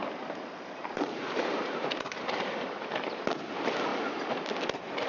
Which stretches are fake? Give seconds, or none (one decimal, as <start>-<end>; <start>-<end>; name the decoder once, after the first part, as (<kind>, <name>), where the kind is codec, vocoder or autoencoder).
0.0-2.7 (vocoder, BigVGAN v2); 3.9-4.5